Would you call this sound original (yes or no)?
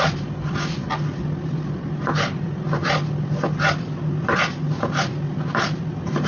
yes